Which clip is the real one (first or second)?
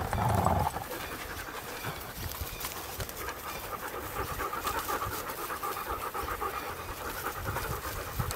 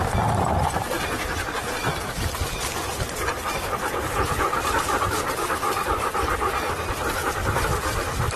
first